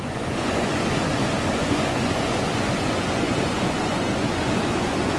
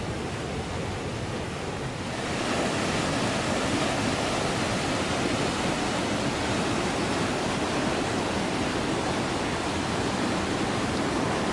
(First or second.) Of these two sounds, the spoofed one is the first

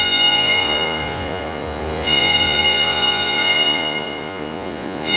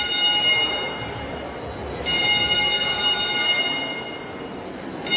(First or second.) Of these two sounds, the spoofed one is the first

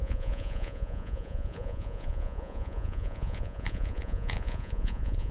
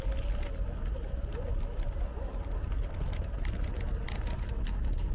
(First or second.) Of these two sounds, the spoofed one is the first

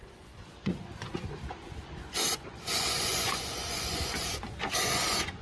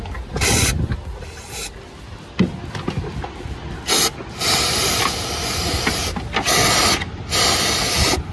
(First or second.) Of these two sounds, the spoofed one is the first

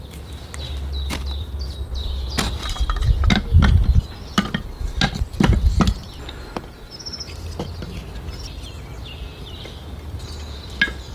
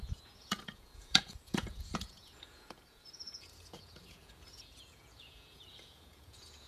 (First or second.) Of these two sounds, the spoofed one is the second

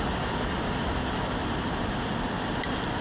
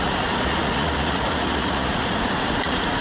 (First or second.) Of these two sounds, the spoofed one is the second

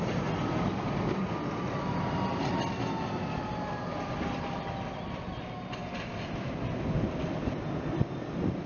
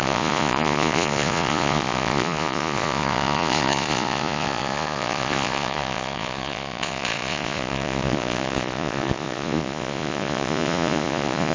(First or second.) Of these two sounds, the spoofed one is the second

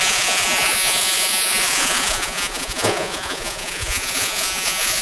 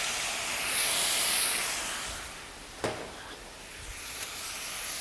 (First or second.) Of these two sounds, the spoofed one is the first